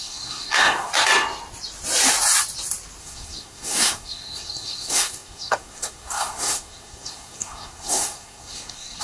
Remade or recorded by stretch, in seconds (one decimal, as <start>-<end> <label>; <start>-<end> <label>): 0.0-0.9 remade; 0.9-3.0 recorded; 3.0-9.0 remade